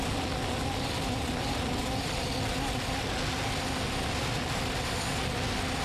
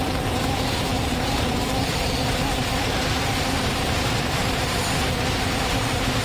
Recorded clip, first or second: first